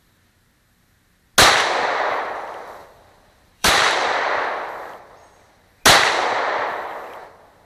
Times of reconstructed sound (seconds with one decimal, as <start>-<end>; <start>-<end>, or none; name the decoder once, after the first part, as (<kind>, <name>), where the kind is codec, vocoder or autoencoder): 2.8-4.7 (vocoder, BigVGAN v2)